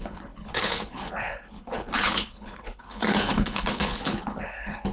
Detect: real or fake fake